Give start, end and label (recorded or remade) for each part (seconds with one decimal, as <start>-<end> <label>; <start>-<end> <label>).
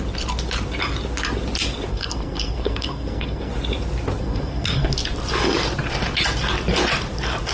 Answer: 0.0-1.9 recorded; 1.9-3.5 remade; 3.5-4.2 recorded; 4.2-4.9 remade; 4.9-7.5 recorded